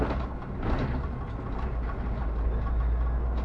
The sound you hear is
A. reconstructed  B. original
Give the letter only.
B